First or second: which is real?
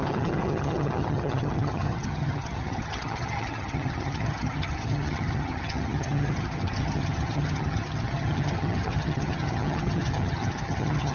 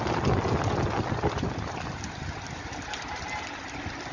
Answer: second